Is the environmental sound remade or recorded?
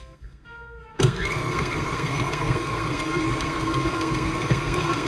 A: remade